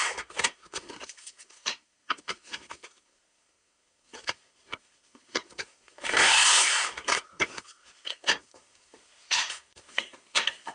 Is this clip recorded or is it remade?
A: remade